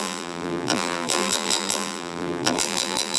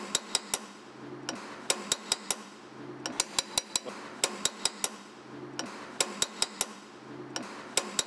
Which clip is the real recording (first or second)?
second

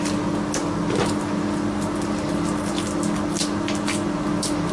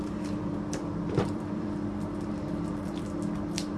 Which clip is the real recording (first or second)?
first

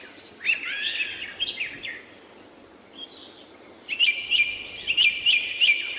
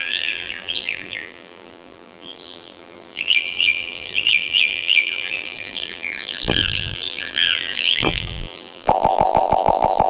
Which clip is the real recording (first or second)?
first